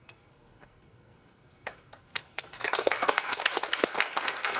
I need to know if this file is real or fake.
fake